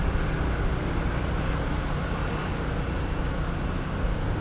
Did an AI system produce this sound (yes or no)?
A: no